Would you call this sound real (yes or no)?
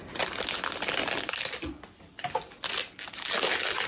yes